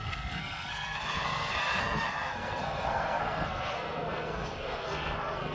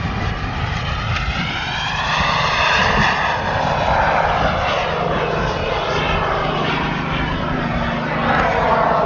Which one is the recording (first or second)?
second